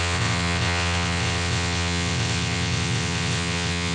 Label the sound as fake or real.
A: fake